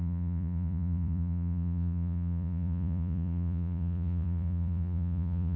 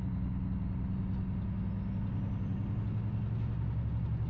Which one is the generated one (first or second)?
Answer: first